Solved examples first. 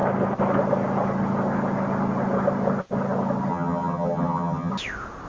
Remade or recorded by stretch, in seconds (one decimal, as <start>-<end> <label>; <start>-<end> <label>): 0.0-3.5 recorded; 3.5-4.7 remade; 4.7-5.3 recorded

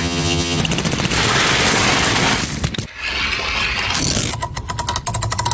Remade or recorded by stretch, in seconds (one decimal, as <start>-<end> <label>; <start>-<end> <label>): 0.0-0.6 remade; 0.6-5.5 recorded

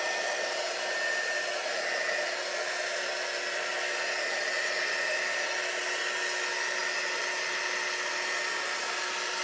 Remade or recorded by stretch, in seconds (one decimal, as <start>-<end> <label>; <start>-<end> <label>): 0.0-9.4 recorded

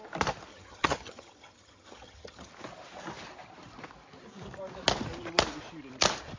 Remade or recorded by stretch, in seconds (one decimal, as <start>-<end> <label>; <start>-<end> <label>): 0.0-0.5 recorded; 0.5-2.5 remade; 2.5-6.4 recorded

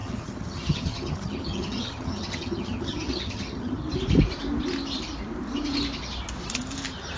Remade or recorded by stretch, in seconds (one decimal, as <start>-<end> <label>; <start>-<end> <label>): 0.0-3.9 remade; 3.9-7.2 recorded

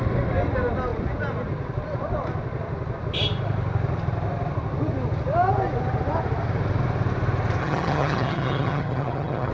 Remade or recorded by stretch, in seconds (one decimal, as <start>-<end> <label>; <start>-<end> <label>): 0.0-7.6 recorded; 7.6-9.5 remade

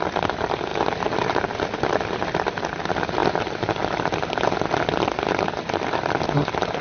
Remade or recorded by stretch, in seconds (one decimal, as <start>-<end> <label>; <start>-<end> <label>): 0.0-6.8 recorded

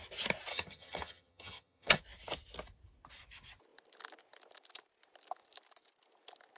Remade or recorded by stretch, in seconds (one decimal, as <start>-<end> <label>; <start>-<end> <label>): 0.0-0.5 recorded; 0.5-2.0 remade; 2.0-6.6 recorded